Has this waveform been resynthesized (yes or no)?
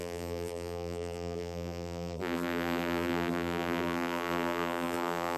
yes